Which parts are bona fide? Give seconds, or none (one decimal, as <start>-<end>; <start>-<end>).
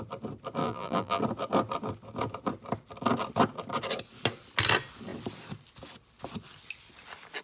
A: 0.0-0.6; 1.2-7.4